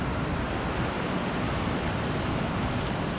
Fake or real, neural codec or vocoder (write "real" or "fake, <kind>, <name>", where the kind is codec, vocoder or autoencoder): real